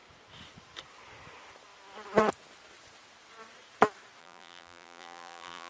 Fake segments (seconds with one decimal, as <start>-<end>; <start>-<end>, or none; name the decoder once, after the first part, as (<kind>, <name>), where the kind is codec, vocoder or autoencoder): 4.2-5.7 (vocoder, BigVGAN v2)